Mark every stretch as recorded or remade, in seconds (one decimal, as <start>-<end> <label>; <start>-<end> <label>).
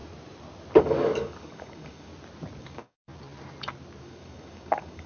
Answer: 0.0-0.8 recorded; 0.8-2.1 remade; 2.1-2.6 recorded; 2.6-3.1 remade; 3.1-4.0 recorded; 4.0-5.1 remade